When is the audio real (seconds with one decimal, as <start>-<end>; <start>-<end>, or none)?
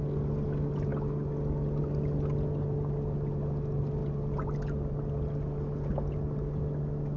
0.0-7.2